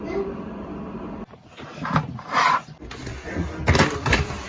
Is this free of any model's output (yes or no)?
yes